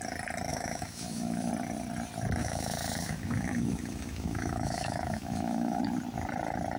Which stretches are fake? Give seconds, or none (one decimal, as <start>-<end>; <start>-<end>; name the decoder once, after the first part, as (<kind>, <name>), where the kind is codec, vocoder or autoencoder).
0.5-1.5 (autoencoder, DAC-VAE); 2.4-5.8